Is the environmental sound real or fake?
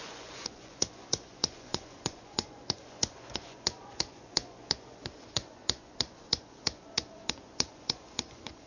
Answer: fake